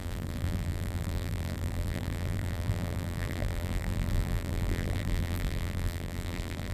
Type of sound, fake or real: fake